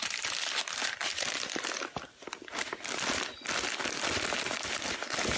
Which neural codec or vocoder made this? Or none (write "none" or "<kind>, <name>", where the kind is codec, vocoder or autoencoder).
none